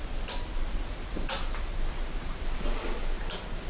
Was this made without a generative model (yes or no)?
yes